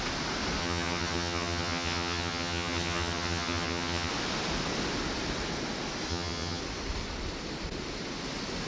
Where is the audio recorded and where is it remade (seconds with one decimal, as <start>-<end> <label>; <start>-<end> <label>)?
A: 0.0-0.6 recorded; 0.6-4.1 remade; 4.1-6.1 recorded; 6.1-6.6 remade; 6.6-8.7 recorded